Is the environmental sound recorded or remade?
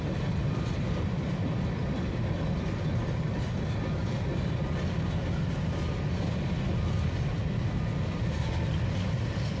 recorded